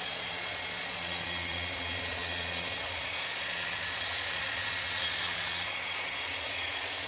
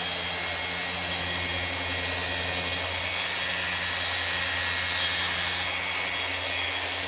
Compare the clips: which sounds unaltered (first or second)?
second